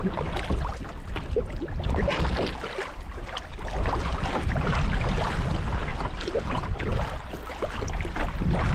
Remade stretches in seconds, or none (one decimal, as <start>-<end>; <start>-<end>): none